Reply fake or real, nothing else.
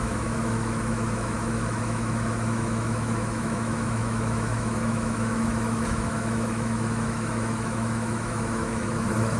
fake